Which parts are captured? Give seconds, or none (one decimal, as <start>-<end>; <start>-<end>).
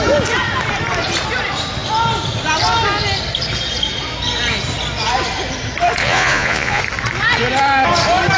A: 0.0-6.0; 6.8-8.4